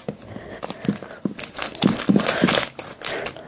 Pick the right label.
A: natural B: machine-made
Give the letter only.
A